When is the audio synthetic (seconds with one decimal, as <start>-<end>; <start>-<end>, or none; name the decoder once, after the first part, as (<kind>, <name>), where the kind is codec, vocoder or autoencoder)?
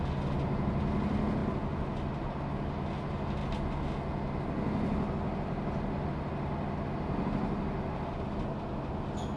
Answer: none